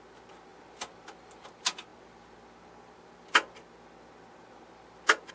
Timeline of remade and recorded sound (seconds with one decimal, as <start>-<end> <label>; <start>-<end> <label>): 0.0-5.3 recorded